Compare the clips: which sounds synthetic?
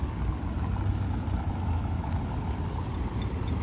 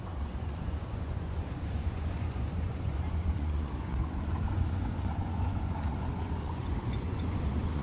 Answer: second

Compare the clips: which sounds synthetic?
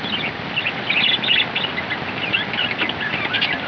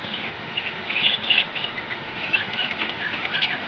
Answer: second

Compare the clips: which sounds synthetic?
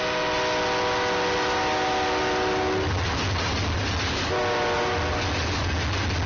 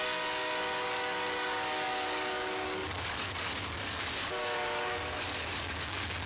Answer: second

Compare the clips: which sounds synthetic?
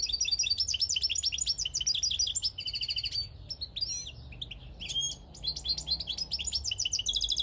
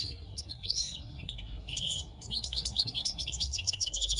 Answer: second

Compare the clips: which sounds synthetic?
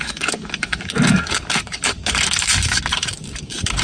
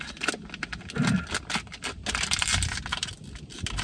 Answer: first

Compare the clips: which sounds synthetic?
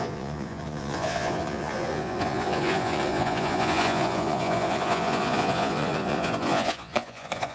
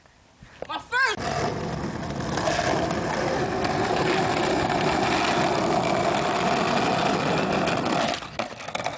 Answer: first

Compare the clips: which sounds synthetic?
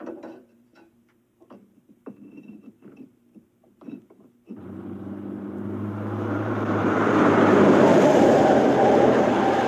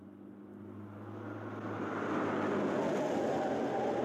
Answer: first